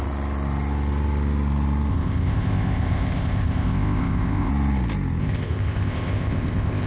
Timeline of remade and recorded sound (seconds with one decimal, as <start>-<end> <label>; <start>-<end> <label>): 0.0-1.9 recorded; 1.9-4.5 remade; 4.5-5.2 recorded; 5.2-6.9 remade